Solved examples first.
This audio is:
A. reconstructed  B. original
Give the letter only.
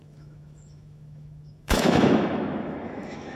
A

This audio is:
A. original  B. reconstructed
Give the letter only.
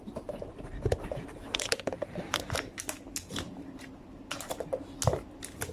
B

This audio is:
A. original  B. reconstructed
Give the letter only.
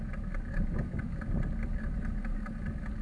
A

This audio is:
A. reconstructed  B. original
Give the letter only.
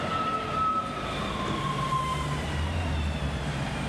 A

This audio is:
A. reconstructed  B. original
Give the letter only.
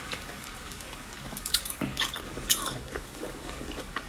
A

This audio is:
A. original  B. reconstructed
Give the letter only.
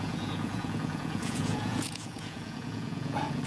B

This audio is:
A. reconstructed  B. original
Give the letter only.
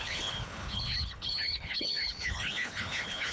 A